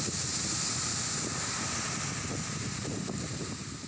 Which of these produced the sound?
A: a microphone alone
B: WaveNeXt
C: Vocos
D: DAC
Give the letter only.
A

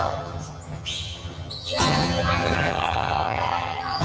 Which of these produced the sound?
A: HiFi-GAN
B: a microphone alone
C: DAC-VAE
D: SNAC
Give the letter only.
A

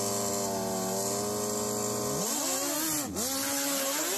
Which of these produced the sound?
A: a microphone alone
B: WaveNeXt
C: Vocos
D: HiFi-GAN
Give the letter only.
A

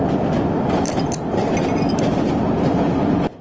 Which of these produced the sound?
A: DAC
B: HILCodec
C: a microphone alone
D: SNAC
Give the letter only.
C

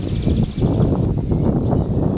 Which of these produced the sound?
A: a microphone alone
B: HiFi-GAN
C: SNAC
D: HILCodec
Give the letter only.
A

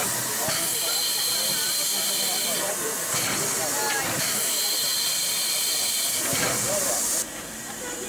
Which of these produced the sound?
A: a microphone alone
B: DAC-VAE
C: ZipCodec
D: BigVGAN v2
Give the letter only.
A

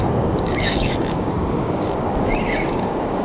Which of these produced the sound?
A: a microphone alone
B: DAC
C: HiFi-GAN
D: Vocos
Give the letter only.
B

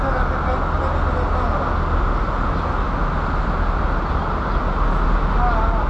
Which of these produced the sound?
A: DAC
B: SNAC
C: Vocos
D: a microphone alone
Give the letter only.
D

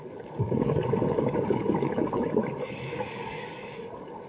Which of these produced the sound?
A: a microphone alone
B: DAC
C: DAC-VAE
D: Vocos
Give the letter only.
B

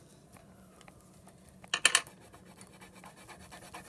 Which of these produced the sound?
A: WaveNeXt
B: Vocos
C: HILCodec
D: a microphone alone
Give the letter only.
D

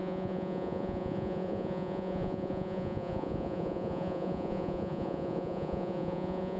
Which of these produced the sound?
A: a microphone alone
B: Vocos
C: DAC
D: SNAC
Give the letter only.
B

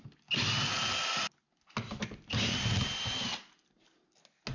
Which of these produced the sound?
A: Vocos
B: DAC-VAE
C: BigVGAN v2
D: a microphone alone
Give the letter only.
D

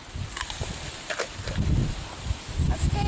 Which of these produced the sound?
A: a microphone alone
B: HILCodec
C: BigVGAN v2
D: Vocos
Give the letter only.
A